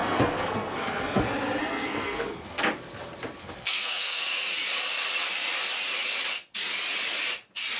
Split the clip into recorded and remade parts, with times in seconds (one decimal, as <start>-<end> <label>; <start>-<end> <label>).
0.0-1.2 remade; 1.2-1.6 recorded; 1.6-2.6 remade; 2.6-3.4 recorded; 3.4-4.2 remade; 4.2-7.8 recorded